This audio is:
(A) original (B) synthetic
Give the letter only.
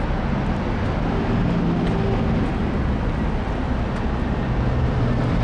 A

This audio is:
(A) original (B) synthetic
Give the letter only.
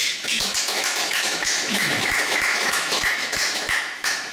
B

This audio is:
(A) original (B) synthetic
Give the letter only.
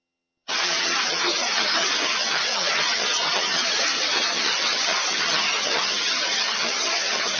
B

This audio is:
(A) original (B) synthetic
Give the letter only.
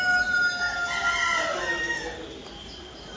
A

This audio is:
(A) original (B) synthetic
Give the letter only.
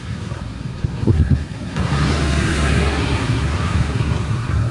B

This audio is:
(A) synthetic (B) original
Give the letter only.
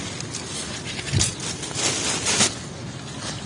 B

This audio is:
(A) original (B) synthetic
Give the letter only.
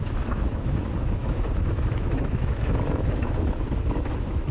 B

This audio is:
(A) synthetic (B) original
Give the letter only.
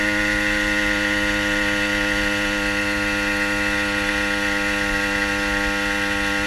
B